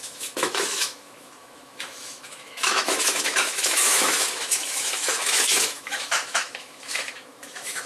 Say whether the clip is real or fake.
fake